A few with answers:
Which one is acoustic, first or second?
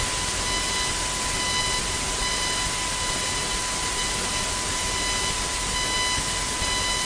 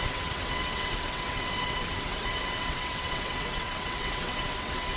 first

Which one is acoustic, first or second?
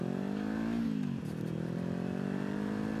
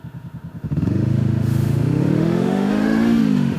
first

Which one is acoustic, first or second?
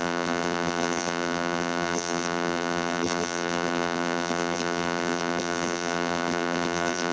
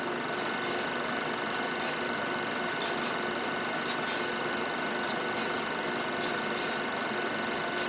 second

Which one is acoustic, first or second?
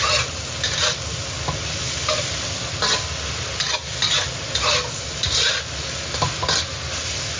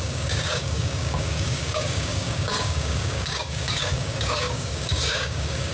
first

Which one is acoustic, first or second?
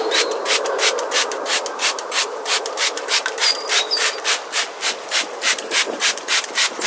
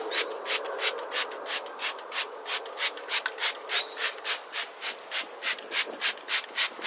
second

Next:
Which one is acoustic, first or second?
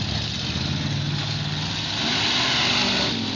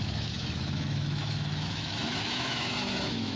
first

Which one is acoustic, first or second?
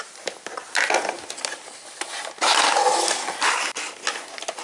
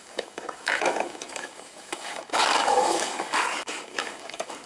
first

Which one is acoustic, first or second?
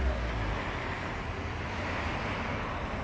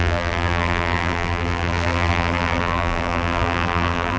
first